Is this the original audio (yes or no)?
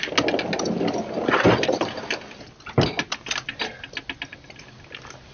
yes